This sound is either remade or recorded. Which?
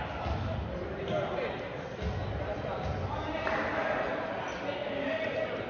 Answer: recorded